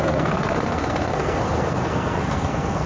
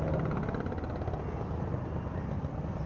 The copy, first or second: first